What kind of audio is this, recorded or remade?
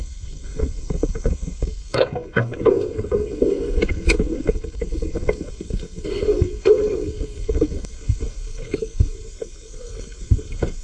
remade